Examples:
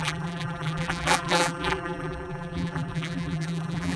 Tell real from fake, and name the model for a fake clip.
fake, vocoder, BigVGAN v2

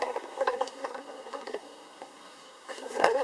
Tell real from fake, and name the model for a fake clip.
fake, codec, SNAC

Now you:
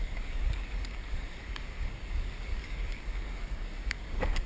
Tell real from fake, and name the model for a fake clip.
fake, codec, DAC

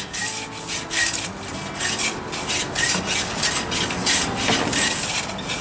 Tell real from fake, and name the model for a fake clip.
real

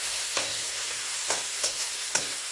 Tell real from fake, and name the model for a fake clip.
fake, codec, SNAC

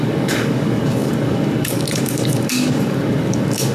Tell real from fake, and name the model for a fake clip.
fake, codec, DAC